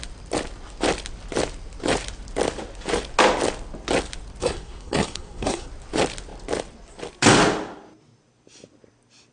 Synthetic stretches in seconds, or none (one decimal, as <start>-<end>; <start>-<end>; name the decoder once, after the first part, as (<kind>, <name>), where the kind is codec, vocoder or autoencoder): 4.4-5.7 (codec, SNAC)